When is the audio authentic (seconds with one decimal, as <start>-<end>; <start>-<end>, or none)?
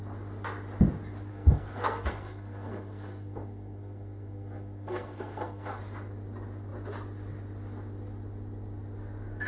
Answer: 0.0-1.3; 5.8-9.5